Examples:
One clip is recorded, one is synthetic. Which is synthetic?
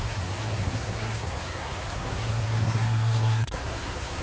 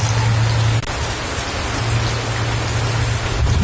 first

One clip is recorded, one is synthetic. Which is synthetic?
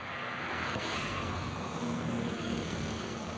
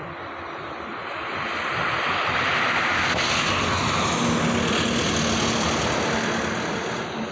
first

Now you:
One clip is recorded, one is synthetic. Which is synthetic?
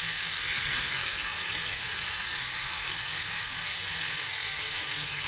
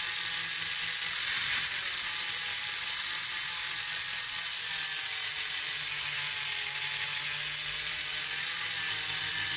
first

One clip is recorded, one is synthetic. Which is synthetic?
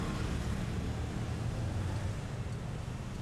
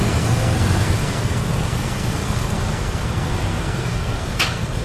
second